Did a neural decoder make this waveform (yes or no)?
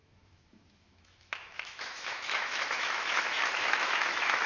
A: yes